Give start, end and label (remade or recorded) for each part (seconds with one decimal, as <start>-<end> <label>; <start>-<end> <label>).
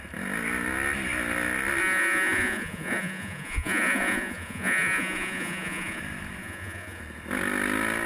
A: 0.0-1.8 recorded; 1.8-6.0 remade; 6.0-6.4 recorded; 6.4-7.0 remade; 7.0-8.1 recorded